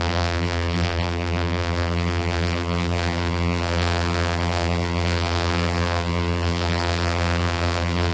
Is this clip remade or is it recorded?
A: remade